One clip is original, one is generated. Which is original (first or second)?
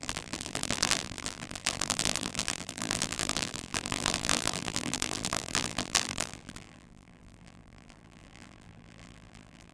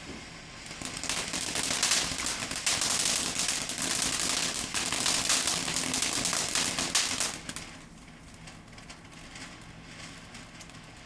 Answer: second